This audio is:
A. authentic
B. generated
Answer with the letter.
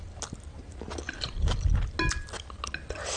A